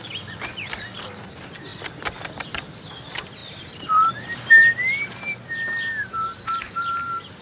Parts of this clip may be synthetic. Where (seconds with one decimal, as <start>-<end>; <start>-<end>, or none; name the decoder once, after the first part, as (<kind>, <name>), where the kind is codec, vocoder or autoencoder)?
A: none